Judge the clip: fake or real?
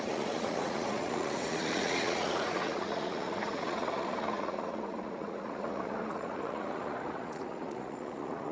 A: fake